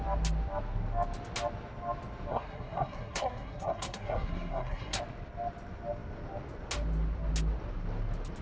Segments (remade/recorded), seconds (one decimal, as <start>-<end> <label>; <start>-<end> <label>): 0.0-2.3 recorded; 2.3-5.0 remade; 5.0-8.4 recorded